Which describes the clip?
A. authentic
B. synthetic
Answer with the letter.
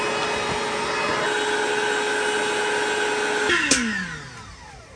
A